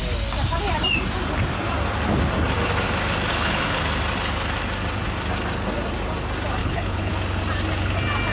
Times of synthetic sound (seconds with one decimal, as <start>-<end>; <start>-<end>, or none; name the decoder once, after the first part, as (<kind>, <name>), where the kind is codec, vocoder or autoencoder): 3.3-3.8 (codec, HILCodec); 6.6-7.1